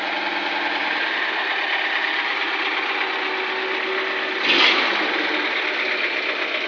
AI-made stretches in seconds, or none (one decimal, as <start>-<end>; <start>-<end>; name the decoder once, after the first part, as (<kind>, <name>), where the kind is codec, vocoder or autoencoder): none